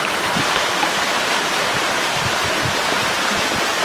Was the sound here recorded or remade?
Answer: recorded